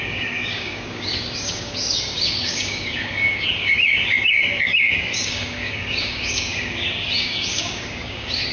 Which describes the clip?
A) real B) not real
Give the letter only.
B